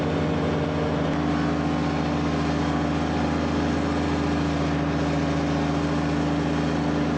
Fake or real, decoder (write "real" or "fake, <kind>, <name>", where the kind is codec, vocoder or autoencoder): real